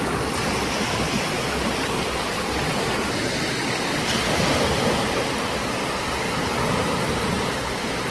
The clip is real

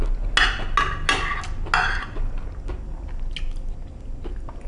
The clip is real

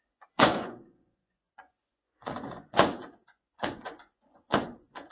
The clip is fake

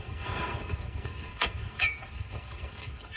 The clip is fake